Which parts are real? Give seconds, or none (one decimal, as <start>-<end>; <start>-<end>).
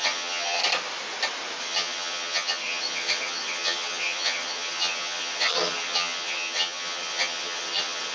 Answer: 0.6-1.6